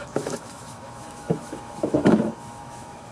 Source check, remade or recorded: remade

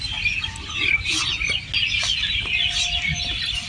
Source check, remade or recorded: recorded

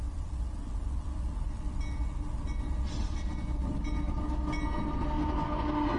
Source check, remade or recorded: recorded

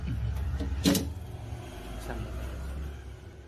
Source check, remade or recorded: recorded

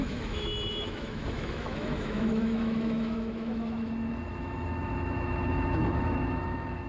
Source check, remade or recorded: remade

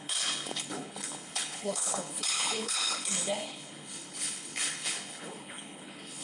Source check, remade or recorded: remade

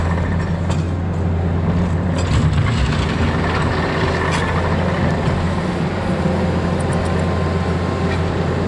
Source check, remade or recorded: recorded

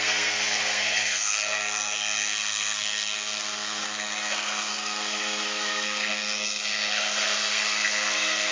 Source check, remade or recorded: remade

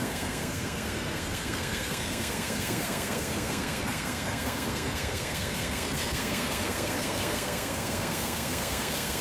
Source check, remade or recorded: remade